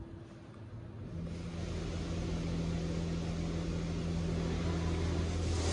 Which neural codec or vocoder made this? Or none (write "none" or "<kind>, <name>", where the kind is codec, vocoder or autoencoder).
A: none